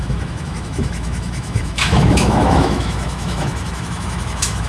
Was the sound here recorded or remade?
remade